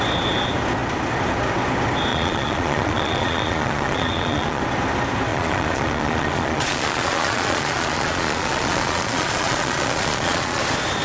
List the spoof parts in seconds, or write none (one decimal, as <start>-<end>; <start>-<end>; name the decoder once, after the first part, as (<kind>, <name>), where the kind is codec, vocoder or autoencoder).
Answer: 2.1-4.6 (vocoder, Vocos); 5.3-10.6